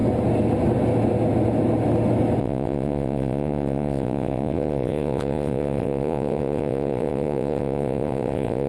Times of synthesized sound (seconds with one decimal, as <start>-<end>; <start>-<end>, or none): 2.4-8.7